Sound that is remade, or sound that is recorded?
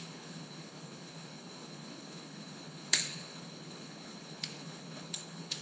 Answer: remade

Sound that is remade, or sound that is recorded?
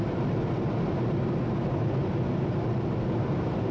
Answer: recorded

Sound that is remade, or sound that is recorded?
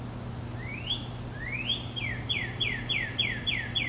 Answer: recorded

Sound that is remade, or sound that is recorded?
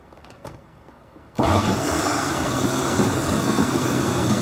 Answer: remade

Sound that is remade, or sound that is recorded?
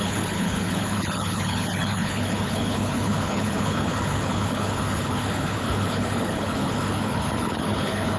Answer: remade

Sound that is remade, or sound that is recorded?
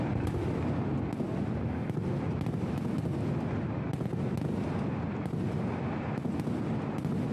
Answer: recorded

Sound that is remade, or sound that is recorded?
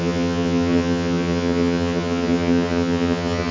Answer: remade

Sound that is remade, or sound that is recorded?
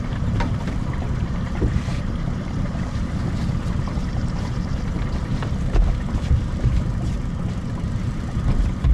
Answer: remade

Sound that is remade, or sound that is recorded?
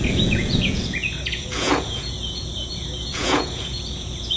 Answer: remade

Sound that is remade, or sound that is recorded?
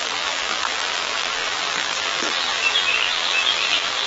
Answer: remade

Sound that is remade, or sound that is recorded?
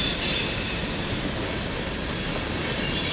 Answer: remade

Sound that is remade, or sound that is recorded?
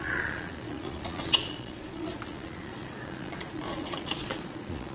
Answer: remade